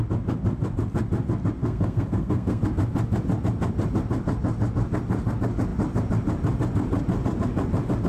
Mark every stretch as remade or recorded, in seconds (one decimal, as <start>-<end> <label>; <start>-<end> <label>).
0.0-1.6 recorded; 1.6-2.6 remade; 2.6-8.1 recorded